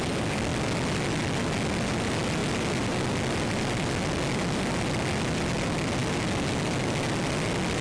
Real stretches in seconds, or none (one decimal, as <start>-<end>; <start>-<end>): 0.0-7.8